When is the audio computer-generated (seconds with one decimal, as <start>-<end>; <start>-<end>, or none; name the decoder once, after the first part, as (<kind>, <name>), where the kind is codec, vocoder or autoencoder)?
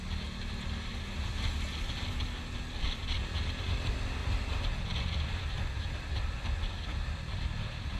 none